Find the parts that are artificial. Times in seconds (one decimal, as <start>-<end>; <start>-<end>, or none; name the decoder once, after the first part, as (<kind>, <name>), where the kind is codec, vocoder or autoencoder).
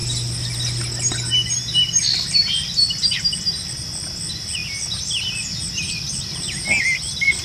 none